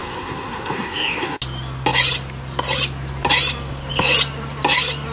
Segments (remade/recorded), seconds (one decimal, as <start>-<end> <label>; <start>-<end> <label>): 0.0-1.4 remade; 1.4-5.1 recorded